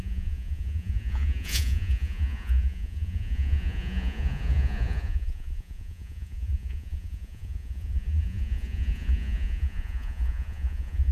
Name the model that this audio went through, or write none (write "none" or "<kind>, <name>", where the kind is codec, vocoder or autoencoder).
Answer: vocoder, Vocos